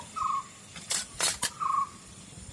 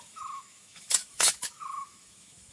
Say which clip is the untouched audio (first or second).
first